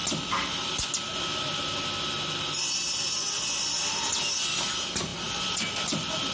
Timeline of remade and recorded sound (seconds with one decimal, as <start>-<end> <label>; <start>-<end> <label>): 0.0-5.1 recorded; 5.1-6.3 remade